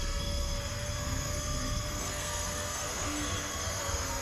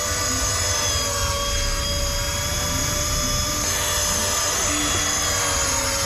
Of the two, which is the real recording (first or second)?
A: second